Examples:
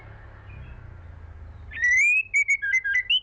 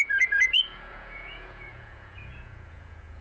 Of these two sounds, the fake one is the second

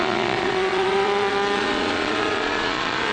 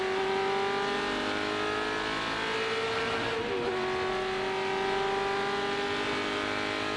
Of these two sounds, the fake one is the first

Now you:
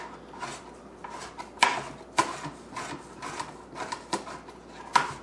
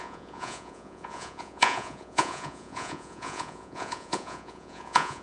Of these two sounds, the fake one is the second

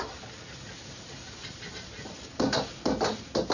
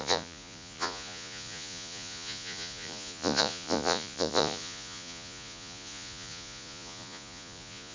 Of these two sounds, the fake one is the second